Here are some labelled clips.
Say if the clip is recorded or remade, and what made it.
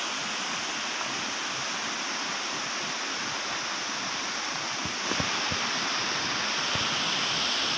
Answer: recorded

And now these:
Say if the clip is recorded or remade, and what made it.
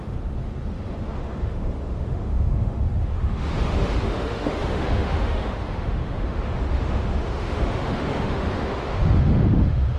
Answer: remade, autoencoder, DAC-VAE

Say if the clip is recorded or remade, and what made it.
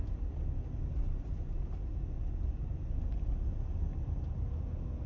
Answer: recorded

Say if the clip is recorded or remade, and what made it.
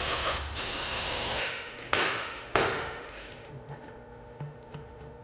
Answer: remade, autoencoder, DAC-VAE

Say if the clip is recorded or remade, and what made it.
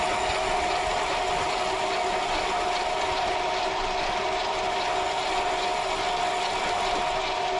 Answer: recorded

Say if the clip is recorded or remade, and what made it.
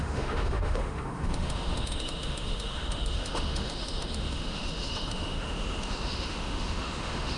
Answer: remade, autoencoder, DAC-VAE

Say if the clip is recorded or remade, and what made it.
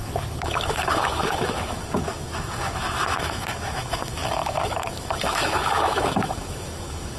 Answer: remade, autoencoder, DAC-VAE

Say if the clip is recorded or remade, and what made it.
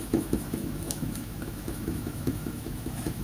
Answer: remade, autoencoder, DAC-VAE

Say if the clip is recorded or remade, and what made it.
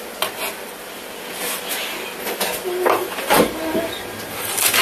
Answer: recorded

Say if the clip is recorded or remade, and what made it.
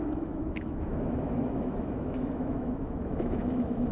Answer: remade, autoencoder, DAC-VAE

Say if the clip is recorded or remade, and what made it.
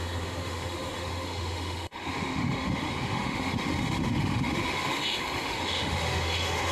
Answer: remade, autoencoder, DAC-VAE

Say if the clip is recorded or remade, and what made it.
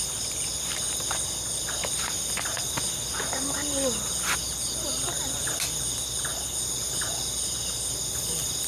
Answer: recorded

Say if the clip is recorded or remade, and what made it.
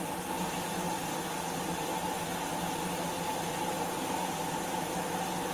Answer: recorded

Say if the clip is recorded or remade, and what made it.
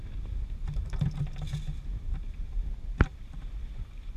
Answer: recorded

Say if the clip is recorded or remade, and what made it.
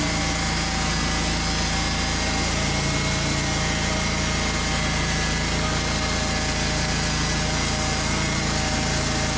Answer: recorded